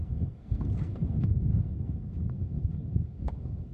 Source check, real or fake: fake